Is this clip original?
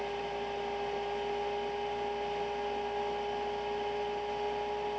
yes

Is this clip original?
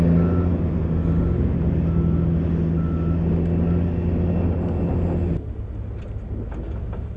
yes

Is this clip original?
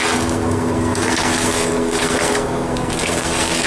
no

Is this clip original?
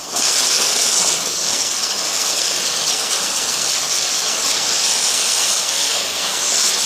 no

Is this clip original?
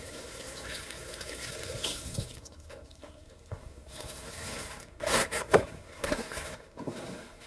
no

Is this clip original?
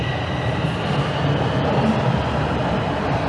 yes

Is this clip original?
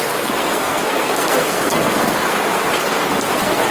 no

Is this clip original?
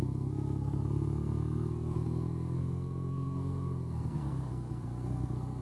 no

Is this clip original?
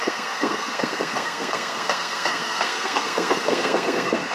no